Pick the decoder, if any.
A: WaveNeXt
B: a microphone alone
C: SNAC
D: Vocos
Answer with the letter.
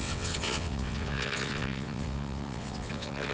A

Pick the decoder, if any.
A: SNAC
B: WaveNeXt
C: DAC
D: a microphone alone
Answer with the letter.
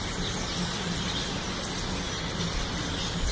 D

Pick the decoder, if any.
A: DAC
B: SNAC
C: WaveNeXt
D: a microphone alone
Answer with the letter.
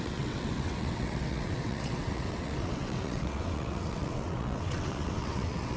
C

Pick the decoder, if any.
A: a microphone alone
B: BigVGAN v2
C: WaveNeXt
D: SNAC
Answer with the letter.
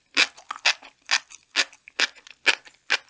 A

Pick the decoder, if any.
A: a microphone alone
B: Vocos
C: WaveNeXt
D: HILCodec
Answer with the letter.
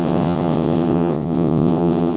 C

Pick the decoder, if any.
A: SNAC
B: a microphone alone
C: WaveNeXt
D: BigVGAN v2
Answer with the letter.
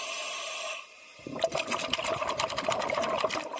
B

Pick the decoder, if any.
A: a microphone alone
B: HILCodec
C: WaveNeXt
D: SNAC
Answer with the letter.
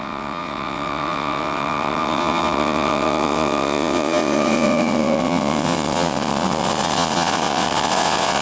C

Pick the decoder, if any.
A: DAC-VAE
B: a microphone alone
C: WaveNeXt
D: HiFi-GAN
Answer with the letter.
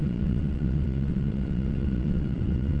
C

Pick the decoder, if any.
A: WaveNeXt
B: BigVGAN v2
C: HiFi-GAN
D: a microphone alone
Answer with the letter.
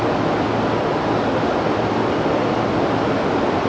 D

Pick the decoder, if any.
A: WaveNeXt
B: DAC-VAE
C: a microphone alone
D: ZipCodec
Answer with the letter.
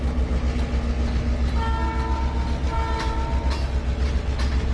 C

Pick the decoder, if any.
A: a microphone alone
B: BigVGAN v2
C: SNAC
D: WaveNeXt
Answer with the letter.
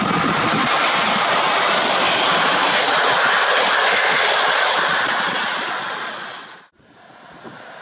A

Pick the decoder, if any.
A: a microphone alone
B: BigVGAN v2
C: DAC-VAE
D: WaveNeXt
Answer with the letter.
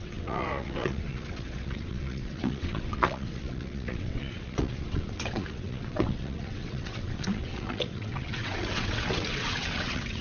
D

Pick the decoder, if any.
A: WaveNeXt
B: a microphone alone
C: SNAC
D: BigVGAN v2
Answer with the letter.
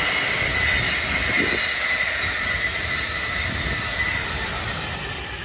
B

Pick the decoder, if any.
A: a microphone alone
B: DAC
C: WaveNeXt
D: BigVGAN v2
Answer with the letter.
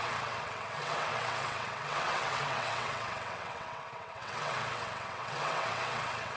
C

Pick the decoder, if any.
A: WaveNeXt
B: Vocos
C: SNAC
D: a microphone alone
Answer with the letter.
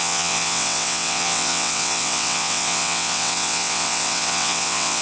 A